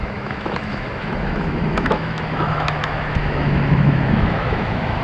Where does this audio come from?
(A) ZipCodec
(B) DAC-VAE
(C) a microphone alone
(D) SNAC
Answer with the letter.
B